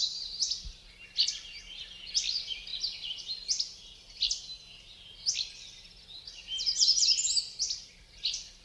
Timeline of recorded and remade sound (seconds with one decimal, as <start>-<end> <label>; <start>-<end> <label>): 0.0-8.6 recorded